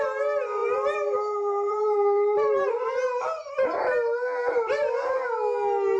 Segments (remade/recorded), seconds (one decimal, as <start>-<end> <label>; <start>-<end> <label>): 0.0-0.6 recorded; 0.6-3.5 remade; 3.5-6.0 recorded